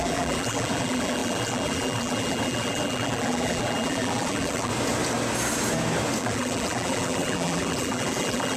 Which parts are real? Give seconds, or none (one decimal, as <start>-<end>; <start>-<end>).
4.7-6.2

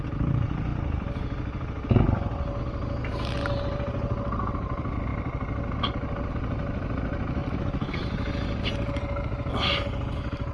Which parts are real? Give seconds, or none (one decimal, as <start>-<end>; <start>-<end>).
0.0-7.4; 7.9-10.5

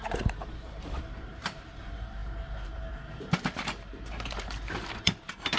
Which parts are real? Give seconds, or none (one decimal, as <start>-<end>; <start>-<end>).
none

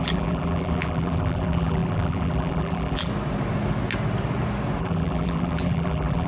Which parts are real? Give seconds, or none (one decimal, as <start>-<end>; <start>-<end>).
3.1-4.8

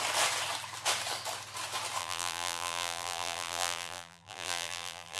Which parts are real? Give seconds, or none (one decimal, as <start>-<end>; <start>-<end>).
0.0-2.0